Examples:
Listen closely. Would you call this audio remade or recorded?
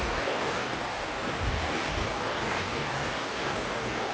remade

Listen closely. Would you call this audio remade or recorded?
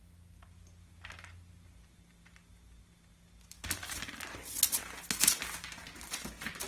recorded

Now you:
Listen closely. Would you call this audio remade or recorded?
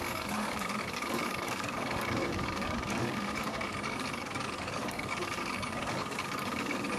remade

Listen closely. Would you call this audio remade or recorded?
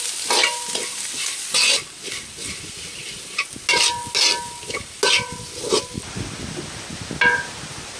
recorded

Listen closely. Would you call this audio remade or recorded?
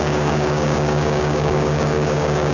remade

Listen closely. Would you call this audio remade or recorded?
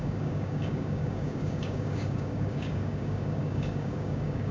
remade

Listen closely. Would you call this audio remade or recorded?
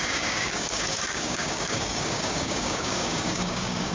remade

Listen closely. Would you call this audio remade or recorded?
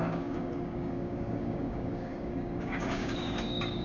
remade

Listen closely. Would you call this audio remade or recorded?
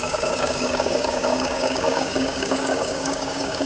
remade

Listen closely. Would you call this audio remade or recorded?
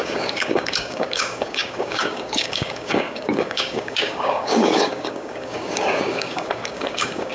remade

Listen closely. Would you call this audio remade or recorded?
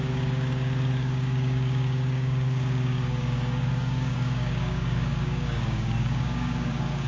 remade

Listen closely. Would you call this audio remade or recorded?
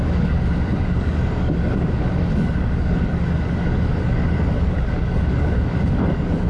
remade